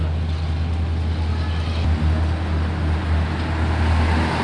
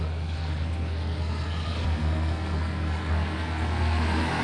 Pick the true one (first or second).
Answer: first